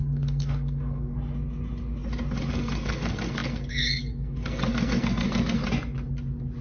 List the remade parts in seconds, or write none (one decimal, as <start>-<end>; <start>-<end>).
0.0-1.1; 2.5-5.6